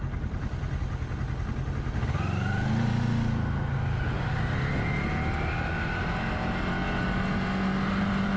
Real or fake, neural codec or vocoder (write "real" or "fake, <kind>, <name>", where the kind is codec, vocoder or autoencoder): real